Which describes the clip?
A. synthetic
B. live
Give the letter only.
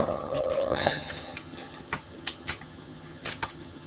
A